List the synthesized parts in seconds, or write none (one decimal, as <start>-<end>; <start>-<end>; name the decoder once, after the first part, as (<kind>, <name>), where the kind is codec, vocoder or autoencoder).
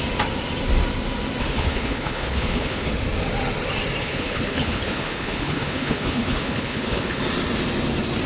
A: 1.4-2.9 (codec, HILCodec); 4.0-7.2